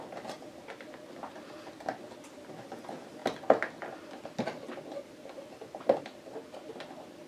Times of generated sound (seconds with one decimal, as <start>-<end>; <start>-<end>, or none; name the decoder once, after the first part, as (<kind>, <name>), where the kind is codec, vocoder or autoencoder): none